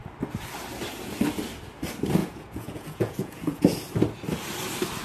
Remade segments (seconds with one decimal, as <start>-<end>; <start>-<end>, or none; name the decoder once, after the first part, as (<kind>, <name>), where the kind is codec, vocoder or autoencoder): 2.2-3.6 (vocoder, Vocos)

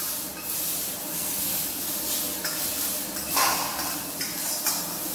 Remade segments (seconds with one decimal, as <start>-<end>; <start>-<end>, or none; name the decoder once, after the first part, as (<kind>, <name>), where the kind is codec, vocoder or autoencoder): 1.1-1.9 (codec, SNAC)

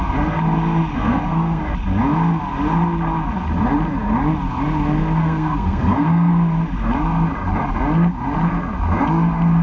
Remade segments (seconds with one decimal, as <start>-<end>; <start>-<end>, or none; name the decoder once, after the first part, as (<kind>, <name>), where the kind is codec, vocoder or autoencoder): 0.9-1.6 (codec, SNAC); 5.2-6.3

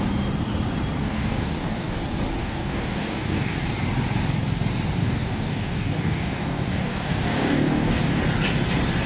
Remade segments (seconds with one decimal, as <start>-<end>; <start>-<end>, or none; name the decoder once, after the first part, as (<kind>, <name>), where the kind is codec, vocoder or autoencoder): 1.0-2.0 (codec, DAC); 2.4-3.7; 5.0-8.2

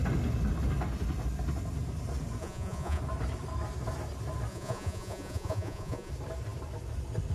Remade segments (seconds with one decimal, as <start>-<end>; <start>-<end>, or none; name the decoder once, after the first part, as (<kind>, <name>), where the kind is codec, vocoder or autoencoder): 2.4-3.0 (vocoder, Vocos); 4.5-6.1